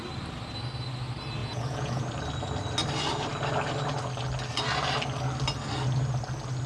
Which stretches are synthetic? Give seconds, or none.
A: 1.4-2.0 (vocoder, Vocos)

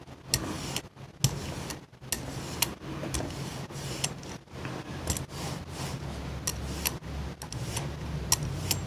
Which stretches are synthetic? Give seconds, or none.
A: none

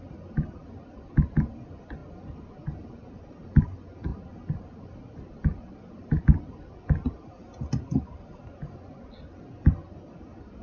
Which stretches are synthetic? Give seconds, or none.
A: none

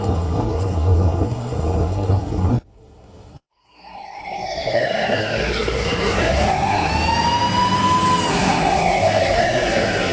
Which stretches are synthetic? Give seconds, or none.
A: 0.0-6.9 (codec, SNAC); 8.3-10.1

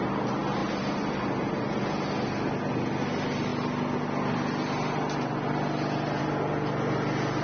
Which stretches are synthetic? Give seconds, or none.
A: none

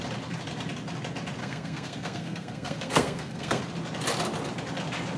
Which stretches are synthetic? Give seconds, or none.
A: 1.4-3.6 (codec, SNAC)

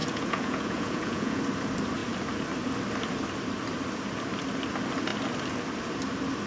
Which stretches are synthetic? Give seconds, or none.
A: 0.0-1.4 (vocoder, Vocos)

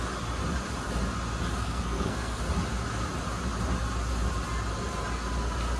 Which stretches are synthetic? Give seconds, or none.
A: 1.6-2.4 (codec, SNAC)